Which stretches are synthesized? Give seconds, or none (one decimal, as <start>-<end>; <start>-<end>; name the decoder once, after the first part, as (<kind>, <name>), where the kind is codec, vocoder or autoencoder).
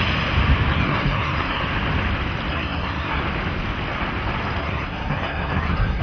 0.7-1.6 (codec, SNAC); 2.5-3.2; 4.6-6.0